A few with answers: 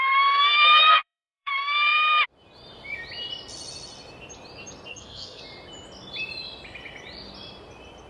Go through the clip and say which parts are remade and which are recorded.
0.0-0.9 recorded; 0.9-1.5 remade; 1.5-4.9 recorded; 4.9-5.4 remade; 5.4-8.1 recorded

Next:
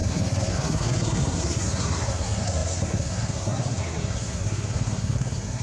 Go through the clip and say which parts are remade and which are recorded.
0.0-5.6 remade

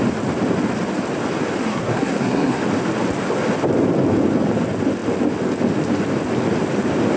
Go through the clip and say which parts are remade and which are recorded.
0.0-1.6 recorded; 1.6-2.6 remade; 2.6-7.2 recorded

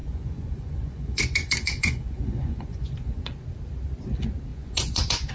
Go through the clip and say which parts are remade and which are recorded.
0.0-3.2 remade; 3.2-4.5 recorded; 4.5-5.3 remade

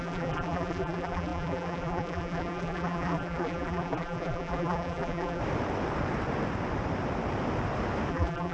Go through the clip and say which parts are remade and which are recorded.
0.0-5.4 remade; 5.4-8.1 recorded; 8.1-8.5 remade

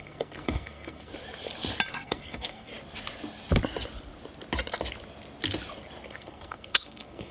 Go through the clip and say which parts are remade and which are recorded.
0.0-1.1 remade; 1.1-1.9 recorded; 1.9-2.7 remade; 2.7-6.1 recorded; 6.1-7.3 remade

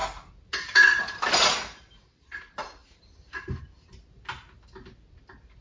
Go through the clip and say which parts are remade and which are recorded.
0.0-5.6 recorded

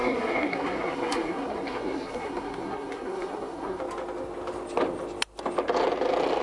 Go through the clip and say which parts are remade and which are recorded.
0.0-3.8 remade; 3.8-6.4 recorded